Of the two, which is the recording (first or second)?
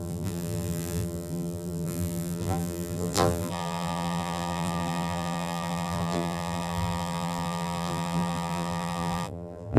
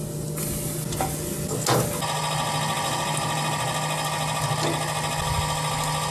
second